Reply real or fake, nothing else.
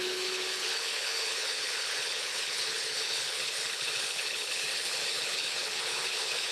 fake